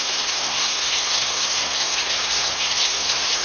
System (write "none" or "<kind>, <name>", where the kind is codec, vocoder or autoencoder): codec, SNAC